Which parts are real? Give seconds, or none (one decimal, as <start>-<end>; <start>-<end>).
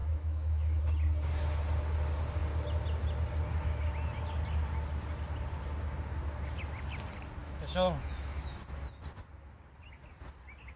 0.8-7.4; 8.6-10.8